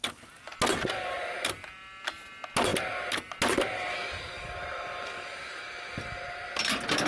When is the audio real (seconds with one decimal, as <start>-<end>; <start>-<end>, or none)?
0.0-7.1